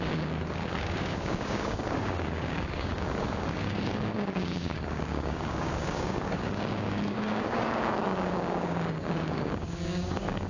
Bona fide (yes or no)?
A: no